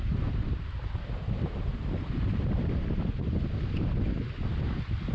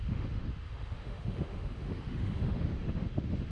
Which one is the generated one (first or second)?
second